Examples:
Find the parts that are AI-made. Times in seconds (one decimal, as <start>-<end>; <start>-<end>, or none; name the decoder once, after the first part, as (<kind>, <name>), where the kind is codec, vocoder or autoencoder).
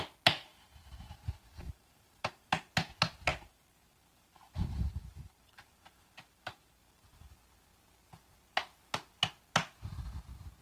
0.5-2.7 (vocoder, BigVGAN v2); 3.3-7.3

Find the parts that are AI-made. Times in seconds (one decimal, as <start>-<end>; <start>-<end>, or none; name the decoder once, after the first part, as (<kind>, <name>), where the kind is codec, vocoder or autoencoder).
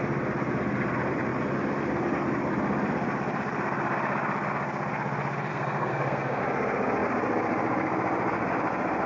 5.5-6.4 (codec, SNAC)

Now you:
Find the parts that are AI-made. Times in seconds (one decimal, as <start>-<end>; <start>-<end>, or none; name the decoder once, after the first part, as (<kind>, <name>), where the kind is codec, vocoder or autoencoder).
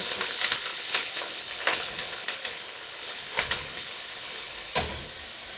0.0-4.7 (codec, HILCodec)